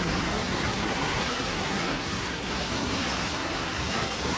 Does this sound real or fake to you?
fake